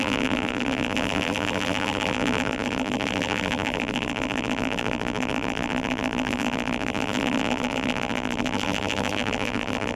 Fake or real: fake